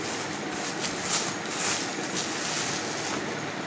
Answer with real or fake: real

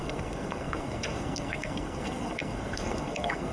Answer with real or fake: fake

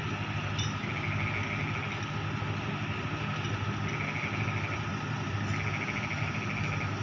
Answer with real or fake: real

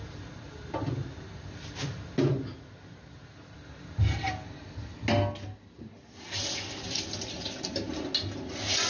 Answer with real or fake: real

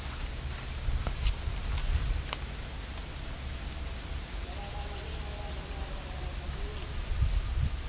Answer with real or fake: real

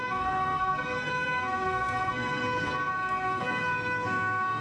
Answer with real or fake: fake